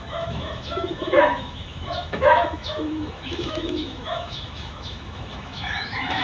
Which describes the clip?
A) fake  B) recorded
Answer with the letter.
A